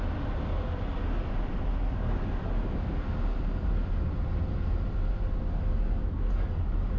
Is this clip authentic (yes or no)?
yes